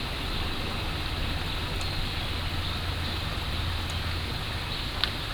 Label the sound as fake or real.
real